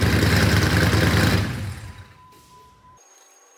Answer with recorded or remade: remade